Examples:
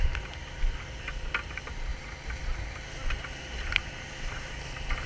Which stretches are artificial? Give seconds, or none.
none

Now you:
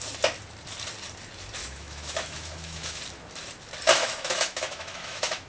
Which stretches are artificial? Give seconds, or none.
1.6-3.0 (autoencoder, DAC-VAE); 4.0-5.5

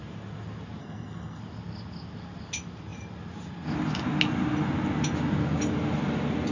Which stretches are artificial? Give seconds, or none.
0.8-1.4 (codec, SNAC)